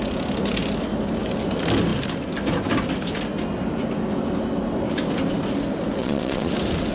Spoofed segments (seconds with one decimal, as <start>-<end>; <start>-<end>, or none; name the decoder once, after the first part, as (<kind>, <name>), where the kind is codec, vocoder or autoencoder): 6.0-6.5 (vocoder, Vocos)